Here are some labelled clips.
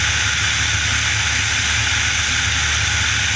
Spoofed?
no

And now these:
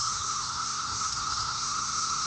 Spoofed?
yes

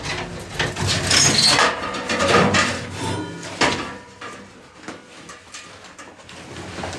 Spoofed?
no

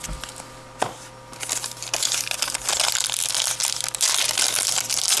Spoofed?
no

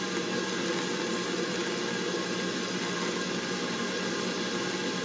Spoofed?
no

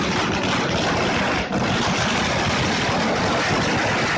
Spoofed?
no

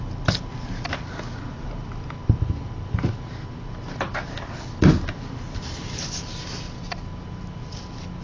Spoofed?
no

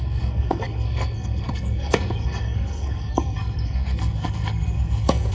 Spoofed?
yes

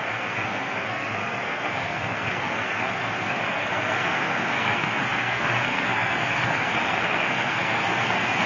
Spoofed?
yes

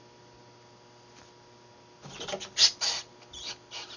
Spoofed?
no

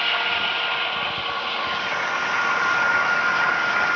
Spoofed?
no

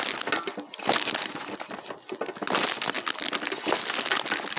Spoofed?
no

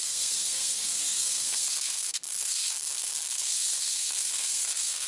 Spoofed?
yes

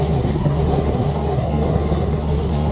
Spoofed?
yes